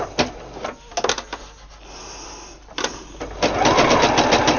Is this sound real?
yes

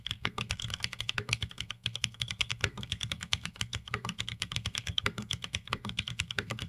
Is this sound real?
no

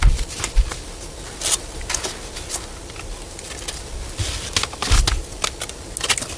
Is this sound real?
yes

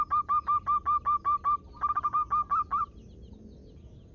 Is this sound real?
yes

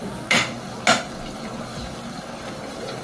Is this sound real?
yes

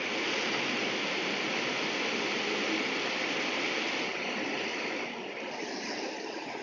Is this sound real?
yes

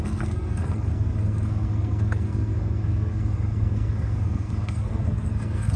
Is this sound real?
no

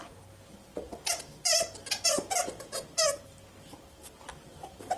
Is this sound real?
yes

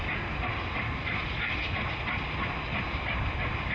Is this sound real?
yes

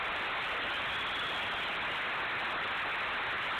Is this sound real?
yes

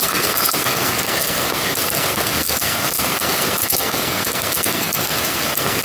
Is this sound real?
no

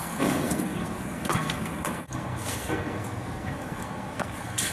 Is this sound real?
no